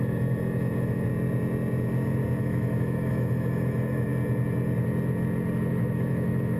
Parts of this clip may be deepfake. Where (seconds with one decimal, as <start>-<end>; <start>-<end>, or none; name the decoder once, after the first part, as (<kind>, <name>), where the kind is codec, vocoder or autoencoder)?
0.0-1.1 (autoencoder, DAC-VAE); 2.4-4.1; 5.7-6.6